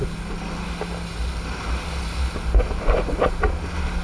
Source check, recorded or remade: recorded